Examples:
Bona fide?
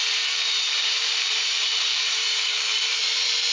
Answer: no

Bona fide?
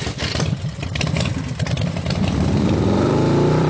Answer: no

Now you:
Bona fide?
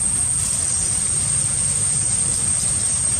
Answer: no